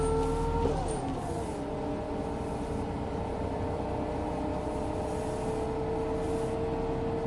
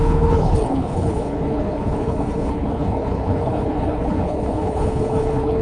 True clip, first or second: first